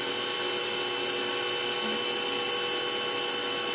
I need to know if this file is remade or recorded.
recorded